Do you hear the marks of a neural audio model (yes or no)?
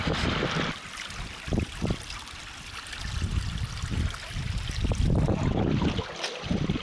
no